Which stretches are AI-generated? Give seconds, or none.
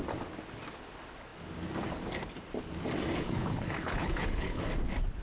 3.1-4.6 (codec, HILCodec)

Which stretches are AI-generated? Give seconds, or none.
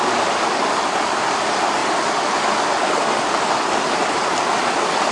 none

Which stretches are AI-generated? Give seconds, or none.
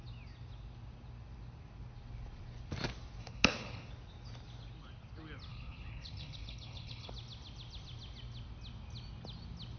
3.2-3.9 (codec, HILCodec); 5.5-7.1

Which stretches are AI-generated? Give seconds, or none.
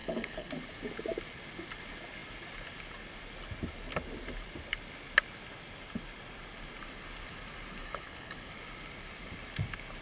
0.0-0.5 (codec, HILCodec); 7.8-8.5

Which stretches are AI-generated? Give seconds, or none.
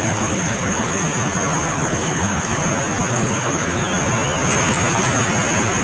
0.0-1.0 (codec, HILCodec); 1.7-2.6; 3.1-3.8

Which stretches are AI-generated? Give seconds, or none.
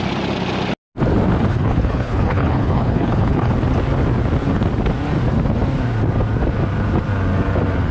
1.5-3.5 (codec, HILCodec)